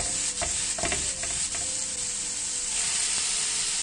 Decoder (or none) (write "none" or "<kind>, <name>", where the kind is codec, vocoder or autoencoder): none